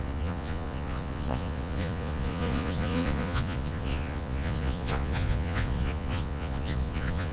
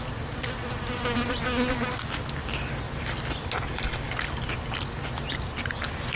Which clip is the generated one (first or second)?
first